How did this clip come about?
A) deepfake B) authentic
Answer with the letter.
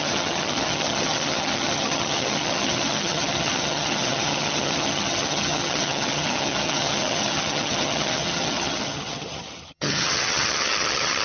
A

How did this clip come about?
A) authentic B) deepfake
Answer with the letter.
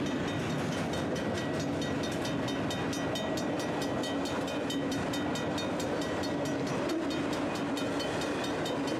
A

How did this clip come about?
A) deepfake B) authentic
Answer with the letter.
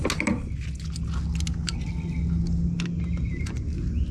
B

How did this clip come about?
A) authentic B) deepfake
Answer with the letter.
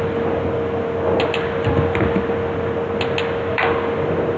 A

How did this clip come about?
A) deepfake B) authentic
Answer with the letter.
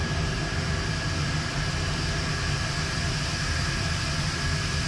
B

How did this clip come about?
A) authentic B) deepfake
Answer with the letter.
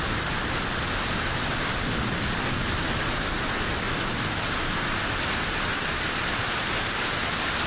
A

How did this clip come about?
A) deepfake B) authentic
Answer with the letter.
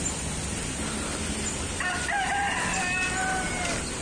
B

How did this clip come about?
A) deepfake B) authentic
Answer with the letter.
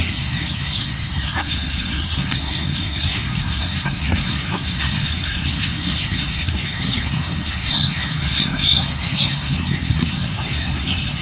A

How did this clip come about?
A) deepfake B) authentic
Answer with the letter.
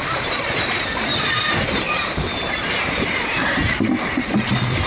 B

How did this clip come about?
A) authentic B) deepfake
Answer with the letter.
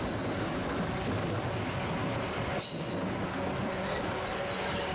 A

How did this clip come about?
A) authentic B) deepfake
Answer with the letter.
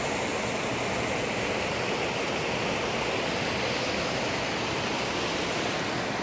A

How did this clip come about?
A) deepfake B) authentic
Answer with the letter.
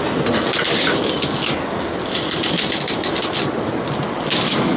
B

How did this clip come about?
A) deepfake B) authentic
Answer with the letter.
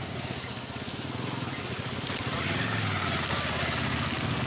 B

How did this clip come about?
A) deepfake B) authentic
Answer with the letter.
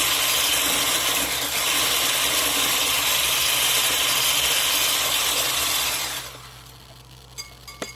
B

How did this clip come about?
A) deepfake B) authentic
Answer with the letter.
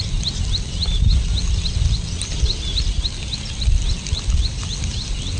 B